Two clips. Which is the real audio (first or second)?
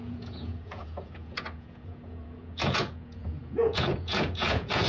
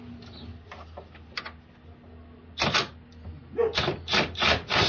second